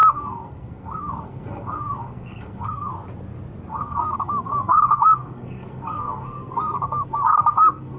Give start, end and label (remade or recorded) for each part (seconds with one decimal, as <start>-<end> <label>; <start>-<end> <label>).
0.0-2.9 remade; 2.9-3.7 recorded; 3.7-8.0 remade